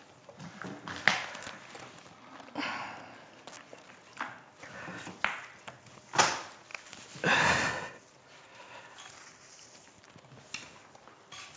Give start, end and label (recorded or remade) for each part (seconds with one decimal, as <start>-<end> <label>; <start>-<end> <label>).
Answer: 0.0-11.6 recorded